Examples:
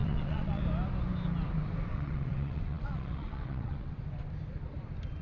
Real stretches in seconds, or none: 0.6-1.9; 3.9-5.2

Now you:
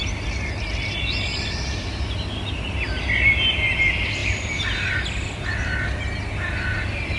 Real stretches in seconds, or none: 0.0-7.2

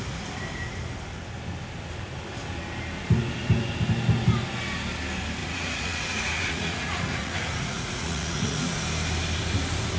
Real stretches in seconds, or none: 0.0-5.4; 8.8-10.0

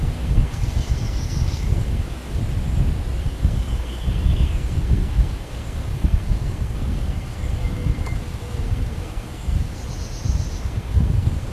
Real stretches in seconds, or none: 2.4-3.2; 9.8-10.6

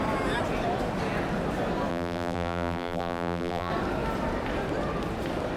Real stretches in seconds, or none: 0.0-1.9; 3.7-5.6